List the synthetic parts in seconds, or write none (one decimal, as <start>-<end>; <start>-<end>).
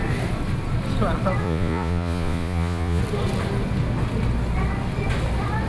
1.4-3.0